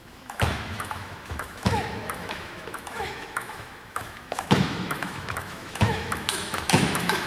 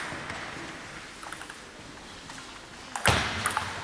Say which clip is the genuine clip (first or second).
second